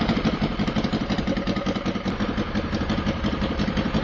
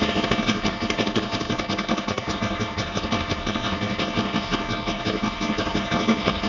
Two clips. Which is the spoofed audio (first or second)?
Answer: second